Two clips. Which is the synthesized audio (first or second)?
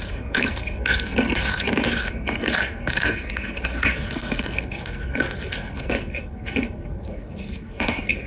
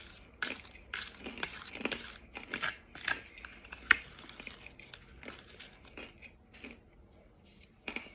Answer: first